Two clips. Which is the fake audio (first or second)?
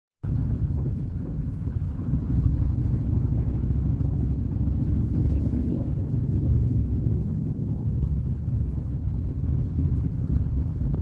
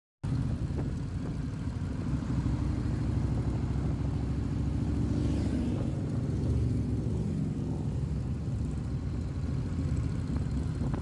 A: first